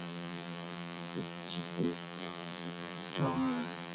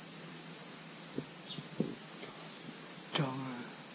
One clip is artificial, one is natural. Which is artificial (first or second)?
first